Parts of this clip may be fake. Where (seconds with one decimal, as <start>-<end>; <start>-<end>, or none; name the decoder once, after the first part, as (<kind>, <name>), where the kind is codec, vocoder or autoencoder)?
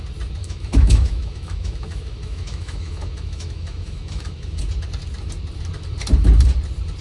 0.4-4.6 (autoencoder, DAC-VAE)